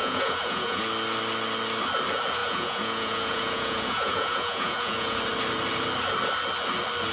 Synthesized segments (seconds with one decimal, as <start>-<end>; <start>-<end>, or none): 0.0-0.8; 2.4-5.2